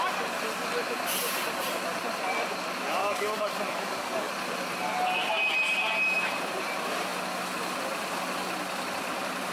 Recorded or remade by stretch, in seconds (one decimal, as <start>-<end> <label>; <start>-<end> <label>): 0.0-3.0 recorded; 3.0-4.3 remade; 4.3-9.5 recorded